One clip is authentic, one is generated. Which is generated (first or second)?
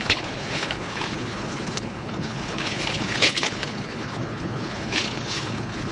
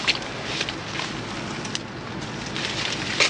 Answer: first